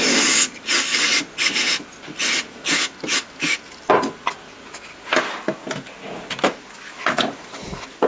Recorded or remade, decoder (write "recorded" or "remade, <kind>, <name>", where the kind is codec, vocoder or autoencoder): recorded